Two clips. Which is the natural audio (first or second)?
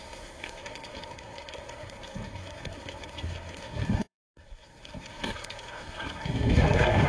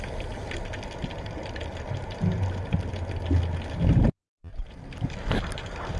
second